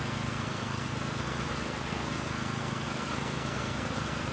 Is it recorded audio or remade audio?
remade